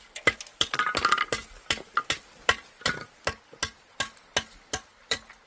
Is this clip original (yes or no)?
yes